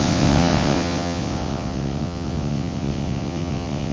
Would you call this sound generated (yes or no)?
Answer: yes